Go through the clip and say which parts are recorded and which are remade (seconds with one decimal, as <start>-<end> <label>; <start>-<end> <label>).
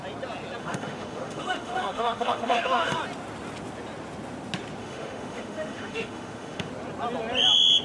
0.0-0.6 recorded; 0.6-3.0 remade; 3.0-4.8 recorded; 4.8-6.7 remade; 6.7-7.8 recorded